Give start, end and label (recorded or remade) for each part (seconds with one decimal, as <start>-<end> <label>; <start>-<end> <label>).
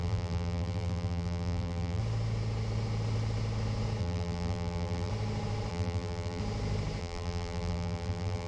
0.0-2.0 remade; 2.0-4.0 recorded; 4.0-5.1 remade; 5.1-5.7 recorded; 5.7-6.4 remade; 6.4-7.0 recorded; 7.0-8.5 remade